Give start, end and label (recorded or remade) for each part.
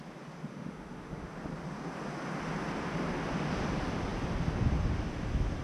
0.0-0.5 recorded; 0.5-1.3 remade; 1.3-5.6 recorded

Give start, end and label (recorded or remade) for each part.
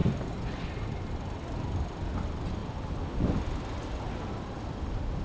0.0-5.2 recorded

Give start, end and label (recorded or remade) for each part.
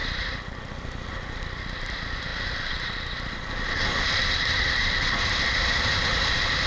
0.0-6.7 remade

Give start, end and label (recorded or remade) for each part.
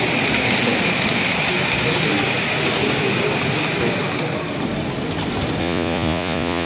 0.0-5.6 recorded; 5.6-6.7 remade